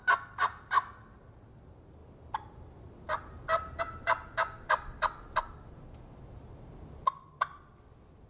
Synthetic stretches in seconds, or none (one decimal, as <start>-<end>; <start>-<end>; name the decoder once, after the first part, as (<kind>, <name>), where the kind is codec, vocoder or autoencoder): none